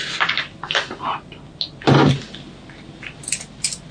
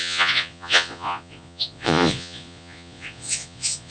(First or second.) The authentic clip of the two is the first